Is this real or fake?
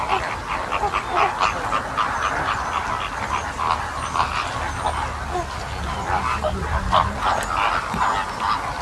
real